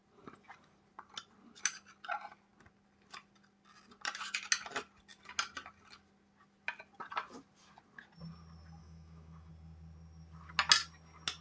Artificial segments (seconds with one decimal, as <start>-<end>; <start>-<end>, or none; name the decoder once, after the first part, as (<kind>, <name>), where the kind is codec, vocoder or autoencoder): 8.8-9.5 (autoencoder, DAC-VAE)